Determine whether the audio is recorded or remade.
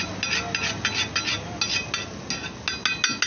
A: recorded